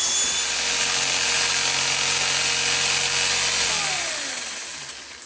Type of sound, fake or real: real